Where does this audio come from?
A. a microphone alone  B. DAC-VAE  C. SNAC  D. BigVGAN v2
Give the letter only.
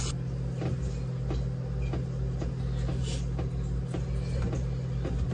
A